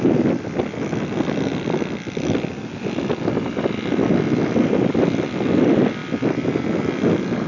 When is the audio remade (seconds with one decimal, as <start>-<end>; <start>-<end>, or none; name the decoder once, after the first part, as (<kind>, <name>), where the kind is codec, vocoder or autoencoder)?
none